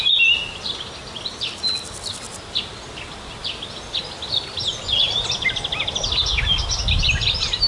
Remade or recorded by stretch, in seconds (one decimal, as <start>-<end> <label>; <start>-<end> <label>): 0.0-7.7 recorded